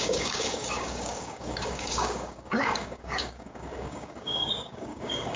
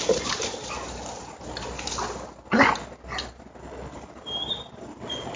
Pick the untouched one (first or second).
second